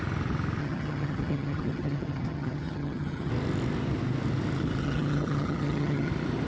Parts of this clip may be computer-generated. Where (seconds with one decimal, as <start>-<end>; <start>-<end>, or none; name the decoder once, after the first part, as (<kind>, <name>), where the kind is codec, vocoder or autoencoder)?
0.6-3.3 (vocoder, HiFi-GAN); 4.8-6.1